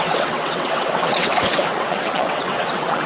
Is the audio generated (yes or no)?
yes